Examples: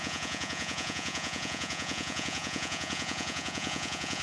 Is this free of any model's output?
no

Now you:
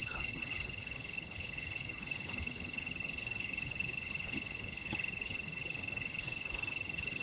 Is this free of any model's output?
no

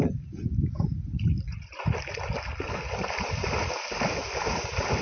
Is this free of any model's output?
yes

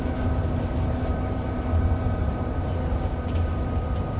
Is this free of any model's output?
no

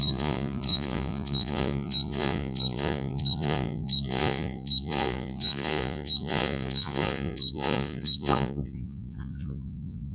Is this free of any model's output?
no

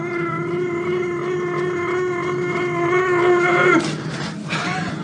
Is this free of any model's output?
yes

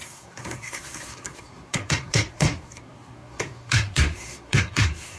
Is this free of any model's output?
no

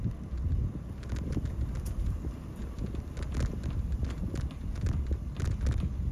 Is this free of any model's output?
yes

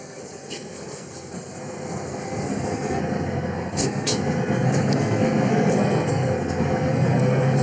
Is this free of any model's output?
no